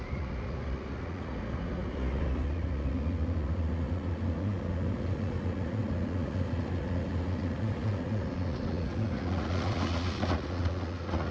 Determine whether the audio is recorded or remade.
remade